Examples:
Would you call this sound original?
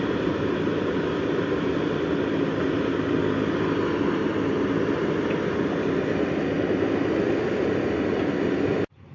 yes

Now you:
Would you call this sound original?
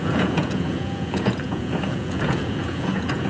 no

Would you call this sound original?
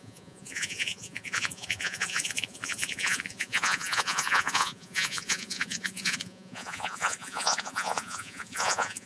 no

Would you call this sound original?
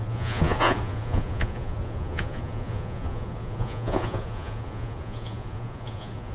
no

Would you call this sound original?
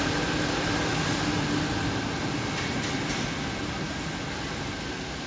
yes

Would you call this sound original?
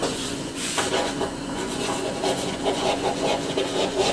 no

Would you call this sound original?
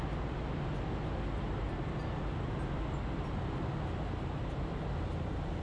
yes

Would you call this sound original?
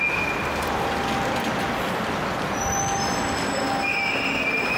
yes